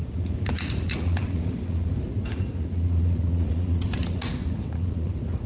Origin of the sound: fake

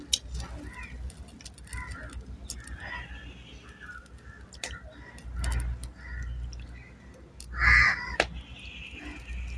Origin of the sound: real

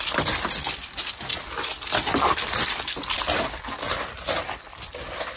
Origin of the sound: fake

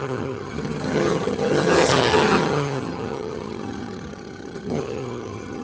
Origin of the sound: fake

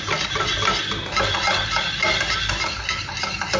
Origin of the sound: real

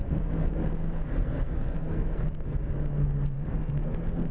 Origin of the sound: fake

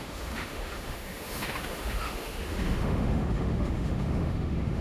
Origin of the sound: fake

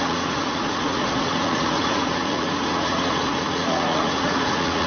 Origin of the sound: fake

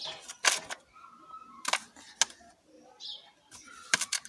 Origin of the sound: real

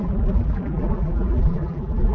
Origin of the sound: fake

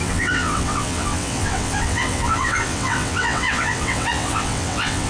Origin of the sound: fake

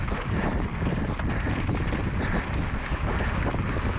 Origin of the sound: real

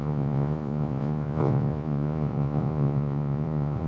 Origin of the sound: fake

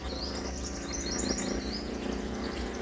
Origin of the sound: real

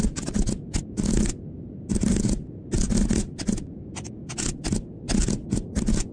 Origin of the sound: real